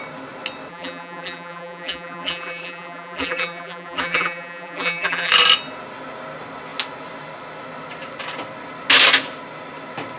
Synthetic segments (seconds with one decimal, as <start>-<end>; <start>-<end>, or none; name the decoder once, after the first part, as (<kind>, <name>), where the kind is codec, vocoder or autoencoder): 0.7-5.3 (vocoder, BigVGAN v2)